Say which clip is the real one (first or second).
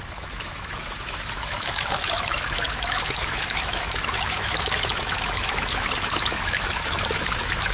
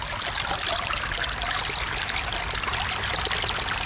second